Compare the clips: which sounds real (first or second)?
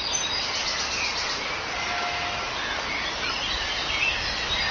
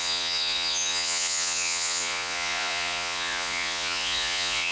first